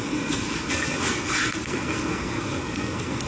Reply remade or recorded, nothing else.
remade